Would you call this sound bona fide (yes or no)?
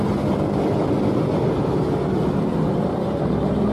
yes